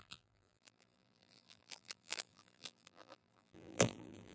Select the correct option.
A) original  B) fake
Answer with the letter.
B